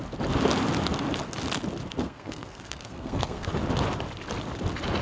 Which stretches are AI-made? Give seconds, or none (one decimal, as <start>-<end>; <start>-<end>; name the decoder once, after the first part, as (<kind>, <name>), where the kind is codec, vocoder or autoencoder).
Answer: 2.0-3.5 (codec, SNAC)